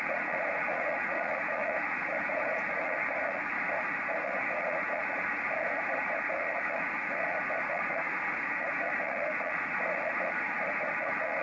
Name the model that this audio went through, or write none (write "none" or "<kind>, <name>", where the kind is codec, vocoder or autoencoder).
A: vocoder, Vocos